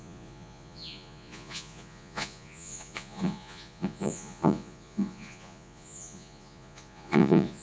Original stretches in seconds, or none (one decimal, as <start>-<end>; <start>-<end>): none